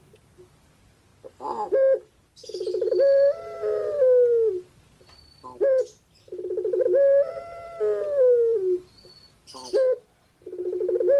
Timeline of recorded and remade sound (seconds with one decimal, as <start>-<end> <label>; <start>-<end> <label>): 0.0-11.2 recorded